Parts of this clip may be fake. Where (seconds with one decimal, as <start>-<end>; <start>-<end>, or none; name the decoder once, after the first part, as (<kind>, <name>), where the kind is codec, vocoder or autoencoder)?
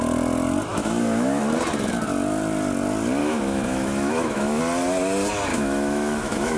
0.7-1.4 (autoencoder, DAC-VAE); 3.2-4.6; 5.5-6.6